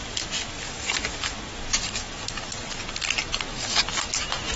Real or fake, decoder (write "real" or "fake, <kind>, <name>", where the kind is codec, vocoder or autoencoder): real